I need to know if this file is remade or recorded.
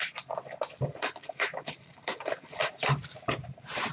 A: remade